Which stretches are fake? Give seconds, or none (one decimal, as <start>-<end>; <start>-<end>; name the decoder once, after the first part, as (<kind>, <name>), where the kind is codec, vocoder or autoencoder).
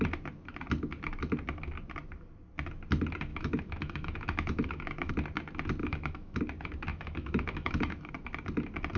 3.3-5.1 (autoencoder, DAC-VAE); 5.8-6.4; 6.9-8.1